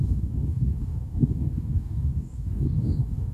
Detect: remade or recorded remade